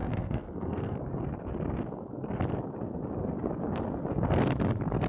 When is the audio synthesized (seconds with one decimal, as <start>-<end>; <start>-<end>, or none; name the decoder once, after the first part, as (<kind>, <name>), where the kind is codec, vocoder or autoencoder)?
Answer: 0.0-1.0 (codec, SNAC)